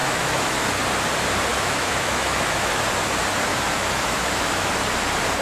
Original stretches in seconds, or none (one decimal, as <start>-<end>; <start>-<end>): 0.7-1.5; 2.8-3.5; 4.7-5.4